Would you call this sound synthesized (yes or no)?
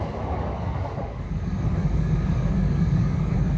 yes